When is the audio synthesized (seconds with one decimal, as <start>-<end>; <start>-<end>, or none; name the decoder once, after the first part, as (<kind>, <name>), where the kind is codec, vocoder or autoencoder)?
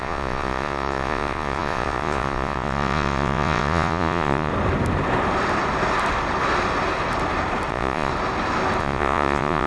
0.0-4.5 (vocoder, Vocos); 7.7-8.1; 8.8-9.7